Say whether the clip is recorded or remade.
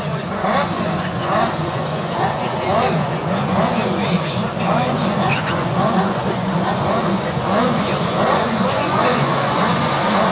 remade